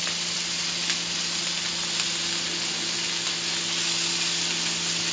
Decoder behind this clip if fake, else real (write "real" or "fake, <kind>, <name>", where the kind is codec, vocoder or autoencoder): real